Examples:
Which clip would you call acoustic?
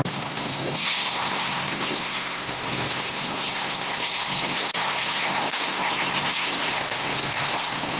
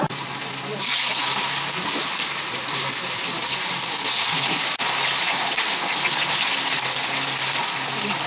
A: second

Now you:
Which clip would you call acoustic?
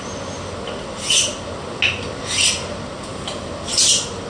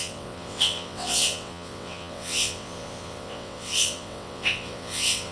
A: first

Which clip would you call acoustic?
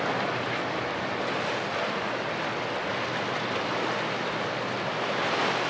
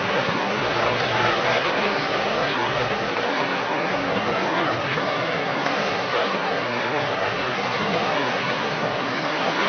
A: first